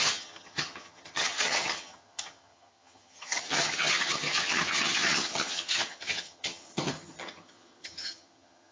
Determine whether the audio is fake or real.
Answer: fake